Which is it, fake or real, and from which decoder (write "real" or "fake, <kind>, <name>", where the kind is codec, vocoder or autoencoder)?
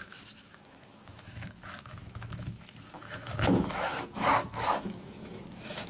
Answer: fake, autoencoder, DAC-VAE